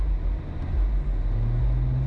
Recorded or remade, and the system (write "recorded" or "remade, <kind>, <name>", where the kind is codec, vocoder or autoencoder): recorded